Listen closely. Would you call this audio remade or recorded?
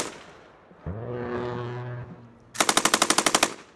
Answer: recorded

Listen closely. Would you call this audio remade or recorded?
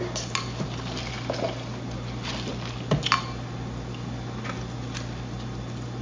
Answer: recorded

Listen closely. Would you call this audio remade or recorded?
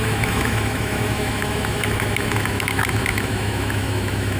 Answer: remade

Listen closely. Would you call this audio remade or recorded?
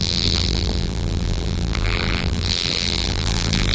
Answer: remade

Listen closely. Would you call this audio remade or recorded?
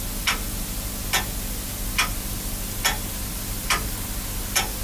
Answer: recorded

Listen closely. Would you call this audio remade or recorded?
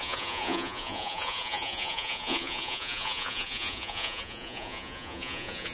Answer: remade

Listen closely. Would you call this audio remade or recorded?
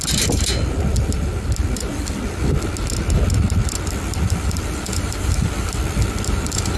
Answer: recorded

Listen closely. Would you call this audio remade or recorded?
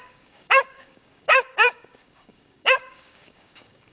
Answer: remade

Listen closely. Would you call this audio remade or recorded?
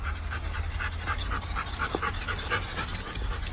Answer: recorded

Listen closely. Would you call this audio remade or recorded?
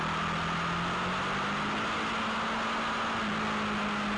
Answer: recorded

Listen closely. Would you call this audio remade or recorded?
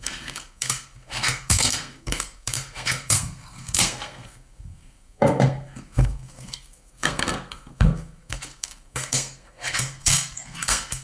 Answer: remade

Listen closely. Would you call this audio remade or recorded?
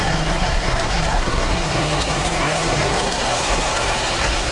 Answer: remade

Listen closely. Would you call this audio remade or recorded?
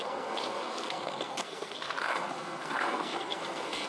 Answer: remade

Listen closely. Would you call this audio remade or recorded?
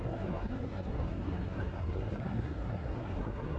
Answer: remade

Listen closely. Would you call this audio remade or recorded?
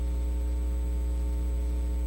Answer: recorded